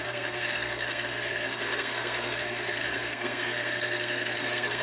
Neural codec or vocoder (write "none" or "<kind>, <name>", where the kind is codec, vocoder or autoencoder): codec, SNAC